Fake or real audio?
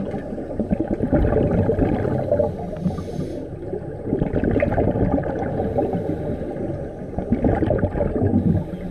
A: real